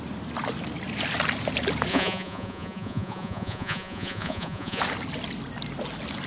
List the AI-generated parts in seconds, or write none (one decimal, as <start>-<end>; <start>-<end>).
1.9-4.8